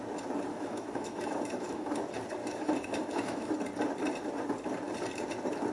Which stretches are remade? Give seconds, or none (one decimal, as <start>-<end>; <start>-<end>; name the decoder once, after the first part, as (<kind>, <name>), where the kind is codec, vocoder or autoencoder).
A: 0.5-1.9 (autoencoder, DAC-VAE); 2.4-3.5